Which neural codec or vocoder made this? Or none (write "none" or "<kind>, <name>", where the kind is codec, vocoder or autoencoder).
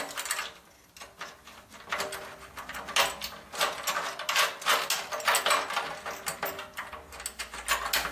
none